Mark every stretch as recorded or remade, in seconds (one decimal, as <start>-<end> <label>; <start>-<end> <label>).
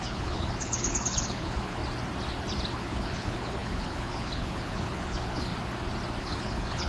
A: 0.0-1.8 remade; 1.8-2.7 recorded; 2.7-5.5 remade; 5.5-6.2 recorded; 6.2-6.9 remade